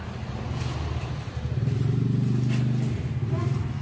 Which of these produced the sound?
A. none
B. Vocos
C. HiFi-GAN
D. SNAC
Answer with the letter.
A